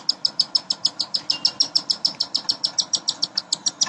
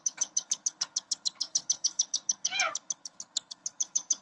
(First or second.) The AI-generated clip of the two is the second